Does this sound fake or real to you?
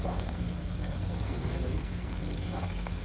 fake